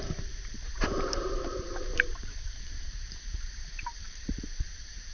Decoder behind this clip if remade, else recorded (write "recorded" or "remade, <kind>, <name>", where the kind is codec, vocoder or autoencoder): remade, vocoder, BigVGAN v2